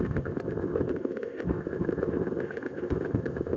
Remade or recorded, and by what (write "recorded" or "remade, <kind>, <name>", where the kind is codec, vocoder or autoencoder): remade, codec, ZipCodec